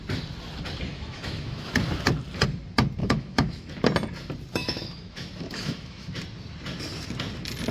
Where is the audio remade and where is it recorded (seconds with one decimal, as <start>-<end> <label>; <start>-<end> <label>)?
0.0-0.9 recorded; 0.9-1.7 remade; 1.7-3.0 recorded; 3.0-3.7 remade; 3.7-4.6 recorded; 4.6-6.2 remade; 6.2-7.7 recorded